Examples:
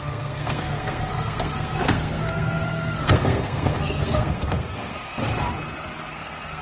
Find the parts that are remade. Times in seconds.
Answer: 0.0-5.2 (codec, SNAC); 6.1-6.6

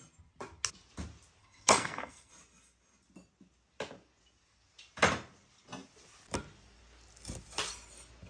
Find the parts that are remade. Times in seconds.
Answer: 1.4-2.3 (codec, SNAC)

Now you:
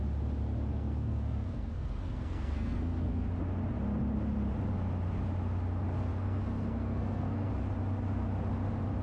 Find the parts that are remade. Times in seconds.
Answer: 0.7-3.3 (codec, SNAC); 6.1-7.5

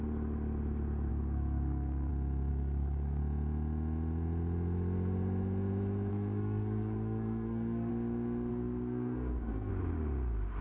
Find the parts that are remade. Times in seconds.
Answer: 1.1-2.1 (codec, SNAC); 2.5-3.2; 6.1-7.9; 8.5-9.7